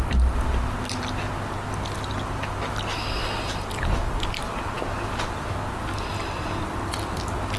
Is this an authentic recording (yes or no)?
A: yes